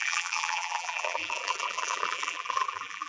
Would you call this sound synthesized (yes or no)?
yes